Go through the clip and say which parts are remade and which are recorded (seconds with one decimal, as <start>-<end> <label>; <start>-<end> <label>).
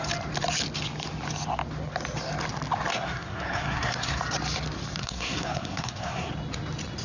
0.0-2.9 recorded; 2.9-4.2 remade; 4.2-5.0 recorded; 5.0-6.3 remade; 6.3-7.0 recorded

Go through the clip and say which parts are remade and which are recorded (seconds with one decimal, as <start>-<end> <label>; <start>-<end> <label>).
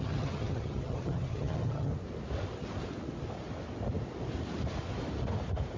0.0-1.9 remade; 1.9-5.8 recorded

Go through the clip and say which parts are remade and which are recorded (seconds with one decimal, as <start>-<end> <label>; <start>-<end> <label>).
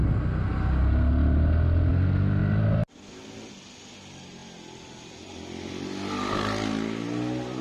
0.0-7.6 recorded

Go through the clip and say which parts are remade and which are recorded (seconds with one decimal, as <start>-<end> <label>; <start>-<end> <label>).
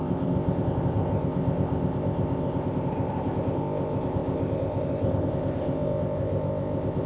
0.0-7.1 remade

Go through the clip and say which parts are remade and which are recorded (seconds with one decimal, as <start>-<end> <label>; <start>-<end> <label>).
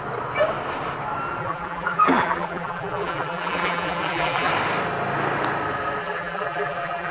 0.0-1.4 recorded; 1.4-4.5 remade; 4.5-6.0 recorded; 6.0-7.1 remade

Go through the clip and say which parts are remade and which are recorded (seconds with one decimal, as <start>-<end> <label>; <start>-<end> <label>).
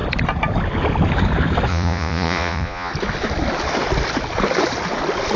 0.0-1.7 recorded; 1.7-2.9 remade; 2.9-5.4 recorded